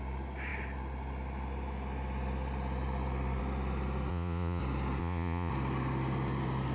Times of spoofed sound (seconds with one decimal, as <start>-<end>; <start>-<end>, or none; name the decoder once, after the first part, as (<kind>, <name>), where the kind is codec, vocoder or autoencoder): 4.1-4.6 (vocoder, Vocos); 5.0-5.5